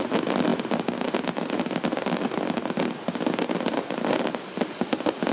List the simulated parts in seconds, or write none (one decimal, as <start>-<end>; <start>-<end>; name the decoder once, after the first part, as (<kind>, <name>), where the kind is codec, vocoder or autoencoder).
none